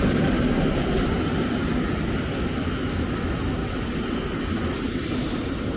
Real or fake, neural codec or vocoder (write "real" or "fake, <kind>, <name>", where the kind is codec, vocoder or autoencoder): real